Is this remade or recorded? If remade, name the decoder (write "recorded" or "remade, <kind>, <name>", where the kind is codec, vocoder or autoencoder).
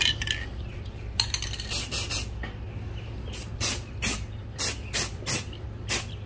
recorded